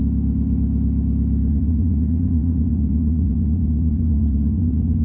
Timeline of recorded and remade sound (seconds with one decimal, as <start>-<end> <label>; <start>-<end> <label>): 0.0-1.5 recorded; 1.5-5.0 remade